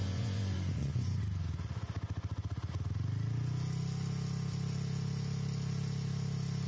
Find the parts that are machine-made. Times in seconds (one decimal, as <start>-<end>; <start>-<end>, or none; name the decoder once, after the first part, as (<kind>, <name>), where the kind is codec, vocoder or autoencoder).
0.0-1.2 (vocoder, Vocos)